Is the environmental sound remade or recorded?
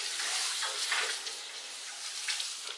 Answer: remade